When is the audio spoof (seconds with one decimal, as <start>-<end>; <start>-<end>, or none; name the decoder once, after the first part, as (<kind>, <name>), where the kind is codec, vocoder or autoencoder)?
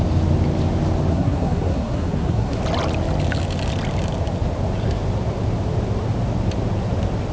1.1-2.6 (codec, SNAC)